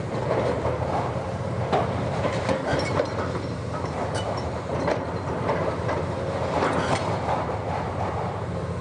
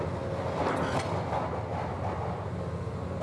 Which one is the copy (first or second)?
first